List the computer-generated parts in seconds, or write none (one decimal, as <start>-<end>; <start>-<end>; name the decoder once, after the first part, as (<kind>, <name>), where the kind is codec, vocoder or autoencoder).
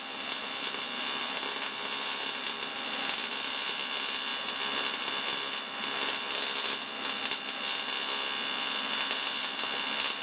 4.3-5.0 (vocoder, BigVGAN v2)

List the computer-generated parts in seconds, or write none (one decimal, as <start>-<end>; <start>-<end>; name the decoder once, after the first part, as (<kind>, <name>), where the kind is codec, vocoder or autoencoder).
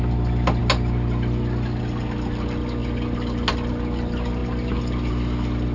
none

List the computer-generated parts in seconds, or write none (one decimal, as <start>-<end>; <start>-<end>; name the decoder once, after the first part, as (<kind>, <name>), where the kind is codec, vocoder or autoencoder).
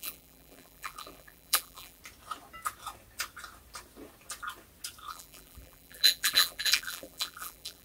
0.0-2.0 (vocoder, BigVGAN v2); 5.1-7.8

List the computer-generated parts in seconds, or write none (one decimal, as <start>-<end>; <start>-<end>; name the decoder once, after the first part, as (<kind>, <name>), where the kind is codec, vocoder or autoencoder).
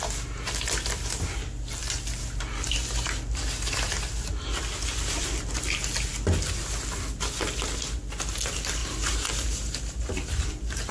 8.8-10.5 (vocoder, BigVGAN v2)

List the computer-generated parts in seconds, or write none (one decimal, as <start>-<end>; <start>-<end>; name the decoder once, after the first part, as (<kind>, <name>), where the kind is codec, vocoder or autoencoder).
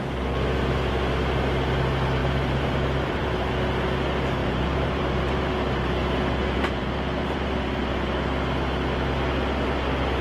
2.2-3.5 (vocoder, BigVGAN v2); 4.4-5.0; 6.4-7.8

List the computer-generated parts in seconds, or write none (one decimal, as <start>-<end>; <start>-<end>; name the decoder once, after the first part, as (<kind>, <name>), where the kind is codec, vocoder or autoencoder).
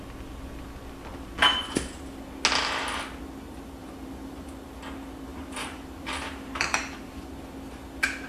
3.8-4.5 (vocoder, BigVGAN v2); 5.3-7.2